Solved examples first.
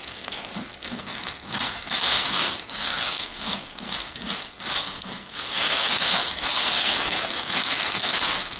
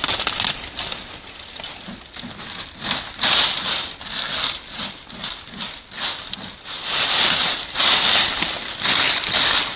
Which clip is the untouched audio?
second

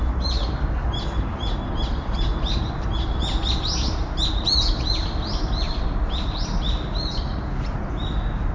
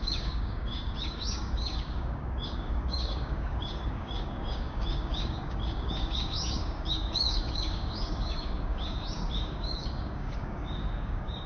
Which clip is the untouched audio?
first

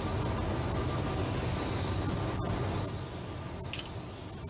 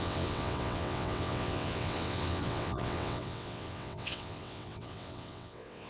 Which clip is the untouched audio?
first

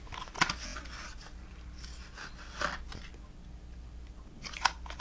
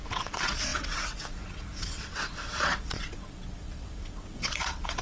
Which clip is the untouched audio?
first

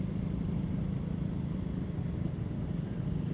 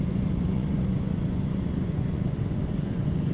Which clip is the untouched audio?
first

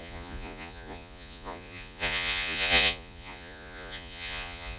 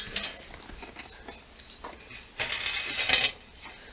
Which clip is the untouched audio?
second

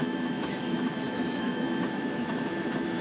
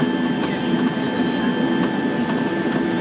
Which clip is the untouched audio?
second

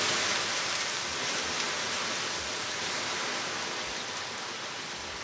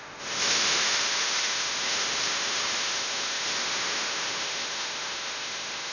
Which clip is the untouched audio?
first